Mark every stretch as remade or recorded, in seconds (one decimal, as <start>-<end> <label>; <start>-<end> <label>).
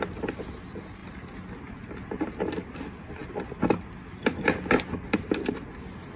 0.0-6.2 recorded